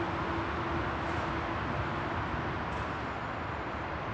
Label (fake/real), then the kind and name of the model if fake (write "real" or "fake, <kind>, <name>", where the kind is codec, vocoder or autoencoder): real